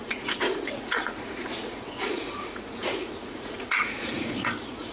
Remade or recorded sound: remade